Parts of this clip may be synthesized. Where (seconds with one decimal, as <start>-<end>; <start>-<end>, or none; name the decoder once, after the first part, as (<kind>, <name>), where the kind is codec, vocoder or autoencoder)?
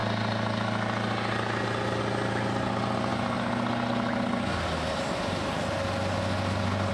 none